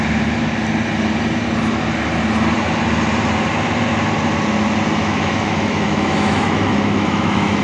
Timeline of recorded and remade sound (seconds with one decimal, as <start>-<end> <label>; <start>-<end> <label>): 0.0-5.0 recorded; 5.0-7.6 remade